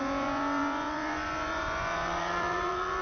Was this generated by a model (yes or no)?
yes